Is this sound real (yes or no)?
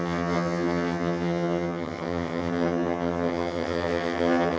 no